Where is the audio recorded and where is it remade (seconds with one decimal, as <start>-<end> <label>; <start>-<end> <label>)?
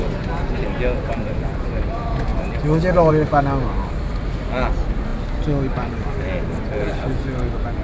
0.0-7.8 recorded